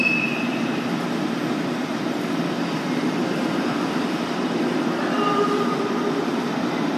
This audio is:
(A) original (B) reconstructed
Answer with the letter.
B